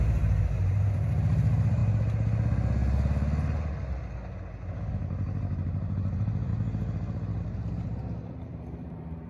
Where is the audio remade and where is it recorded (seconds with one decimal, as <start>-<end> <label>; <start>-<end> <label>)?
0.0-1.8 remade; 1.8-4.9 recorded; 4.9-6.5 remade; 6.5-7.4 recorded; 7.4-9.3 remade